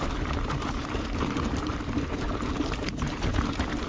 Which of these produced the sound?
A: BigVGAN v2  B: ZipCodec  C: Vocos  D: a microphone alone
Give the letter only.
A